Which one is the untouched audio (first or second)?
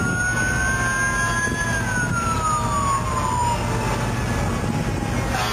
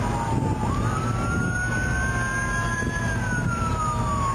first